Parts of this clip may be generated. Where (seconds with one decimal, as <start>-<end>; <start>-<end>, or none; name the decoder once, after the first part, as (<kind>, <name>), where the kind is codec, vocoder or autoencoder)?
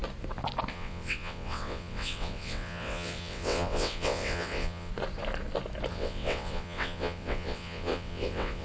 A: 0.7-4.9 (vocoder, WaveNeXt); 5.9-8.6